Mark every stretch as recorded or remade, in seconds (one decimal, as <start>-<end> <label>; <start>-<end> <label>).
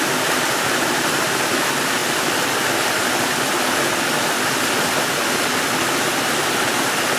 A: 0.0-2.0 recorded; 2.0-3.2 remade; 3.2-7.2 recorded